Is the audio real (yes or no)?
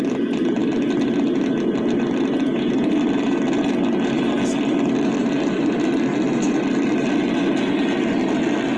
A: yes